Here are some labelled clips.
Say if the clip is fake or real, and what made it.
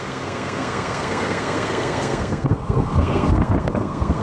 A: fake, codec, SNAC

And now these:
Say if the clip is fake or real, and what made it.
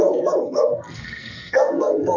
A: fake, codec, SNAC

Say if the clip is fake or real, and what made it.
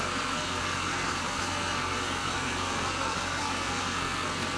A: fake, codec, SNAC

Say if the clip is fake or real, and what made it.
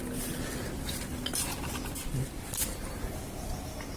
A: real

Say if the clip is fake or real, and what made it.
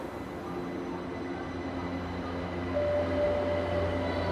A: real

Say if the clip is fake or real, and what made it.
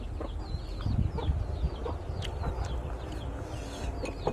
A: real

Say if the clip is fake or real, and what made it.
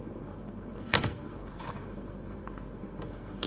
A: fake, codec, SNAC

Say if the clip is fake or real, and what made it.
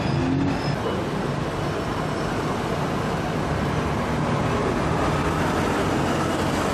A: real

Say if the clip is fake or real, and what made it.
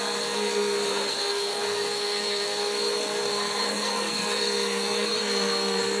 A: fake, codec, SNAC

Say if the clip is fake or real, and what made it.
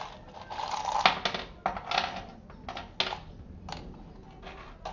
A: real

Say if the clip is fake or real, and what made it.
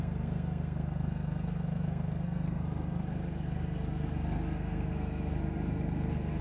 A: fake, codec, SNAC